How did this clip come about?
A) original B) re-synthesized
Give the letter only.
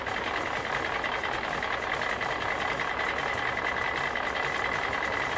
A